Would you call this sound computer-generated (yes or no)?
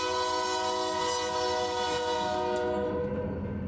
no